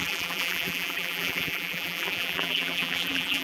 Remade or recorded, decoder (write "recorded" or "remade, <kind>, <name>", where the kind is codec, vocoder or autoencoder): remade, vocoder, BigVGAN v2